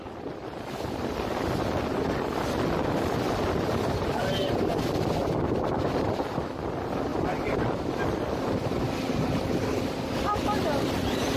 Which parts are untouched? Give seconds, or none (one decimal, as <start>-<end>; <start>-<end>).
0.0-11.4